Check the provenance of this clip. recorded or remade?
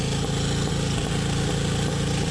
recorded